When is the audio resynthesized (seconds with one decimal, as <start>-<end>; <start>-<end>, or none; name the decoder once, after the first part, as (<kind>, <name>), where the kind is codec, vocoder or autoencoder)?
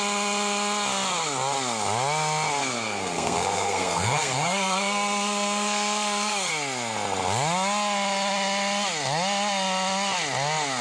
2.6-6.5 (codec, SNAC)